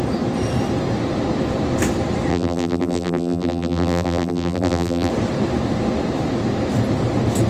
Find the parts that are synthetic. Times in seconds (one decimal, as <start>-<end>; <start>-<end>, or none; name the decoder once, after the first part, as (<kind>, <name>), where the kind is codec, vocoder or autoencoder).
2.3-5.1 (vocoder, BigVGAN v2)